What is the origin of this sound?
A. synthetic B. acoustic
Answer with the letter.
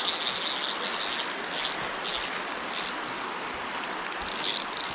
B